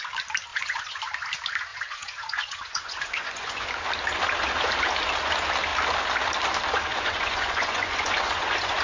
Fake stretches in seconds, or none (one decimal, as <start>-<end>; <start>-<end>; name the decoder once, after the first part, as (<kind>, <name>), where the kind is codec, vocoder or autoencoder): 0.5-1.0 (vocoder, Vocos); 1.7-3.7; 6.9-8.8